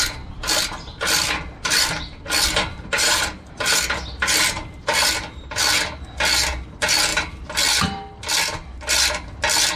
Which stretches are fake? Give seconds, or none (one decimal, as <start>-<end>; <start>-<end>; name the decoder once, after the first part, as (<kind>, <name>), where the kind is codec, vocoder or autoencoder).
2.7-3.3 (vocoder, BigVGAN v2)